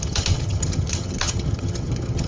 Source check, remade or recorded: remade